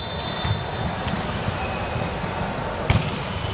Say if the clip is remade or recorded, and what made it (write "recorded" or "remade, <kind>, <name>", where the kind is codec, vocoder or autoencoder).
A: recorded